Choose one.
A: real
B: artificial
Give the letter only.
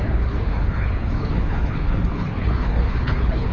B